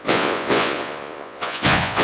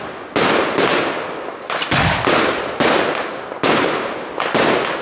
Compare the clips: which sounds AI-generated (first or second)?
first